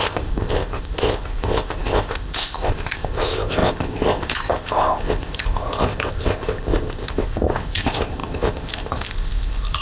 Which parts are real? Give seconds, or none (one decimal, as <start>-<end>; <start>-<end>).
none